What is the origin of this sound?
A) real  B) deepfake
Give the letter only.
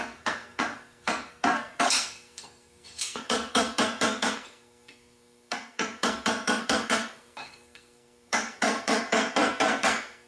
B